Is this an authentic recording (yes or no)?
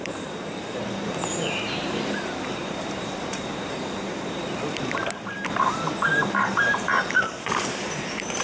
no